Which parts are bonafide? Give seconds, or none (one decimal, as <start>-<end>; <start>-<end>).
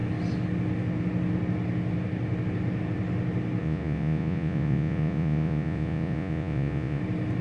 0.0-3.6; 7.0-7.4